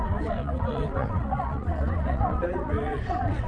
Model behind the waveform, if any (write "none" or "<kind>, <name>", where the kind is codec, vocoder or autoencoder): vocoder, WaveNeXt